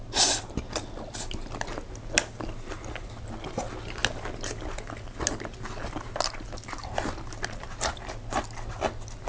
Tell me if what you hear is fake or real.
real